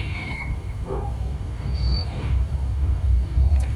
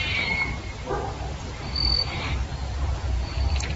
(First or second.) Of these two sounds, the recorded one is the second